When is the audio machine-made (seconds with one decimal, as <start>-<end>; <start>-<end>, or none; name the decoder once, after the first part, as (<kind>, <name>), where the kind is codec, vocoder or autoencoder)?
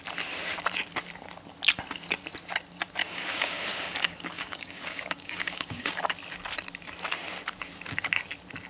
3.0-6.0 (codec, DAC)